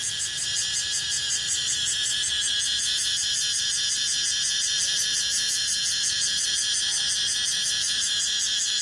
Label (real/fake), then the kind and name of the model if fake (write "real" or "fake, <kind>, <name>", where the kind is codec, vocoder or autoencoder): real